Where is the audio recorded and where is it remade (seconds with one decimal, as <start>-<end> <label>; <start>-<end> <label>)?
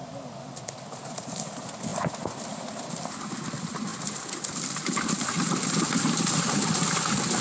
0.0-7.4 recorded